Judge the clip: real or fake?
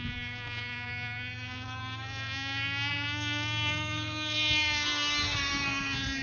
fake